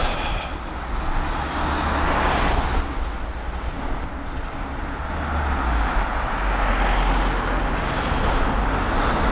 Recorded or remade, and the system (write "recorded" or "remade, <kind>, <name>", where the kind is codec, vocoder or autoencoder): recorded